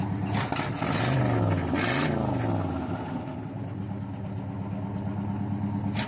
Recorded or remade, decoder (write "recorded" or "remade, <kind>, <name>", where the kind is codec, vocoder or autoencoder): recorded